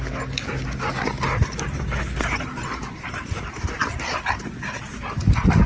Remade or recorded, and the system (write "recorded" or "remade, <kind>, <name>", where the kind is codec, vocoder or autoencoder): recorded